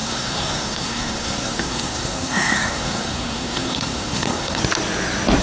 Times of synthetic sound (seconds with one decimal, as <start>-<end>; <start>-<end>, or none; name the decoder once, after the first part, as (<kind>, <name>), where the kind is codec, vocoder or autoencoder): 0.0-4.6 (codec, SNAC)